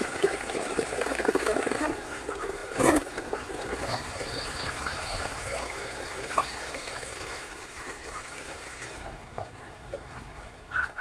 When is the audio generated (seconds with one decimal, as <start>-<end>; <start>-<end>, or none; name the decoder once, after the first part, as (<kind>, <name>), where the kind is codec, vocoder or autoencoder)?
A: 0.0-11.0 (codec, SNAC)